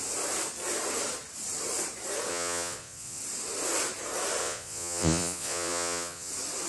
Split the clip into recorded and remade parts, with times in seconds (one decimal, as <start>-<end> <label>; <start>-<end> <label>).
0.0-2.3 recorded; 2.3-3.2 remade; 3.2-4.4 recorded; 4.4-6.3 remade; 6.3-6.7 recorded